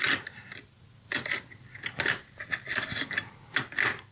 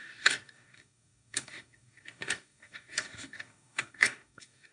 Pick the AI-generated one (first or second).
second